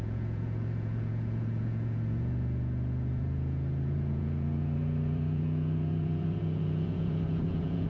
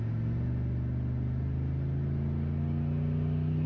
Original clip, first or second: second